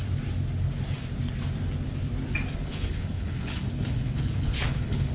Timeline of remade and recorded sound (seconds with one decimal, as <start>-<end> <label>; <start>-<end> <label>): 0.0-2.6 recorded; 2.6-5.1 remade